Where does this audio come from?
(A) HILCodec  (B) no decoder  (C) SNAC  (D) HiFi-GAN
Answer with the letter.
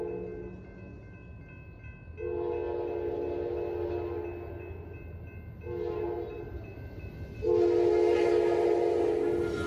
B